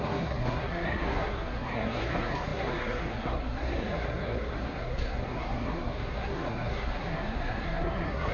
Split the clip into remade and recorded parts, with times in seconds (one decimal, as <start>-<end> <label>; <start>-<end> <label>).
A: 0.0-8.3 remade